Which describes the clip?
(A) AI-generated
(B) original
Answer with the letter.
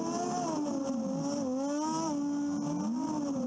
B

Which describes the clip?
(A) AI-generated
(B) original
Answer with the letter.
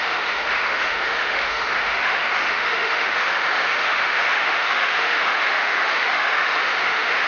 A